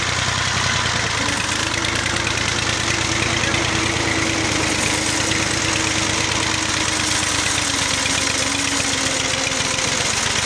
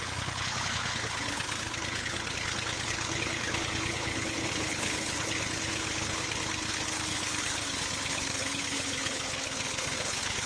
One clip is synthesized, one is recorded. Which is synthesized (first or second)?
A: second